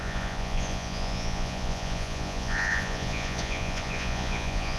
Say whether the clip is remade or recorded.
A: remade